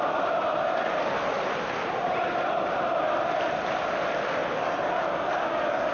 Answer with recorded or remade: recorded